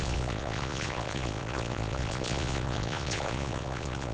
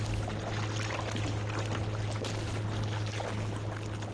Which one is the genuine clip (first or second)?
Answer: second